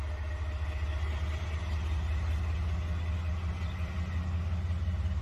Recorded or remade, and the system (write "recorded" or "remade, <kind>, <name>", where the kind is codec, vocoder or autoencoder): recorded